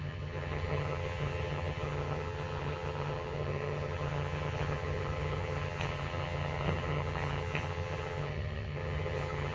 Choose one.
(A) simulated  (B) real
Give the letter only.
A